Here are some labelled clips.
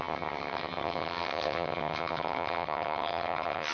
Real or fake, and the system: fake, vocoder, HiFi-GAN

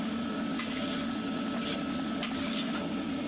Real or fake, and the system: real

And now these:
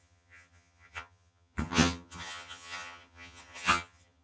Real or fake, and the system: fake, vocoder, HiFi-GAN